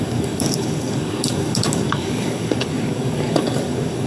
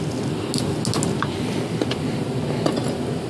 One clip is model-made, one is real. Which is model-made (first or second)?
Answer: first